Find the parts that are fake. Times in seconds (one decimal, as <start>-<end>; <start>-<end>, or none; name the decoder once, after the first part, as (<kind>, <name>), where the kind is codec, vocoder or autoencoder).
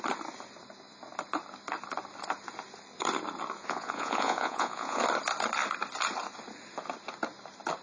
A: 3.6-5.0 (vocoder, Vocos)